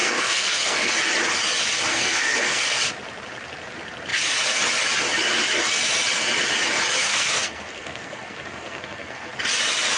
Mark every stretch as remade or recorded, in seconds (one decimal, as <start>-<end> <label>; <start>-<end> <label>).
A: 0.0-0.9 remade; 0.9-1.9 recorded; 1.9-2.8 remade; 2.8-7.0 recorded; 7.0-9.3 remade; 9.3-10.0 recorded

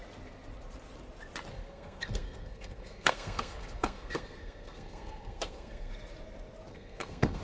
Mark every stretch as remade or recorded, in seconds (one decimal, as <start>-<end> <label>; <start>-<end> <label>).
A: 0.0-1.5 recorded; 1.5-5.9 remade; 5.9-6.7 recorded; 6.7-7.4 remade